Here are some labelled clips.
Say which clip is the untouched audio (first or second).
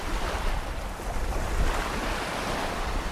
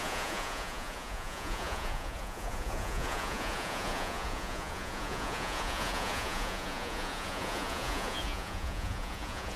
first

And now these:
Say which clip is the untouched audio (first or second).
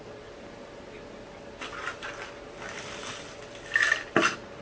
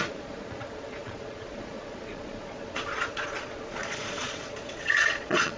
first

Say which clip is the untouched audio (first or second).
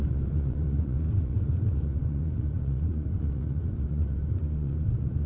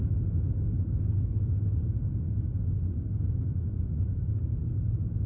second